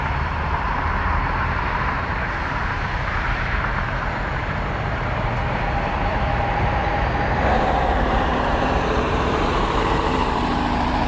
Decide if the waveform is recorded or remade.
remade